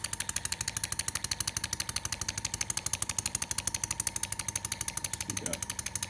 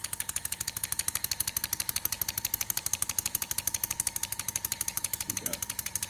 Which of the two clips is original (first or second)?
first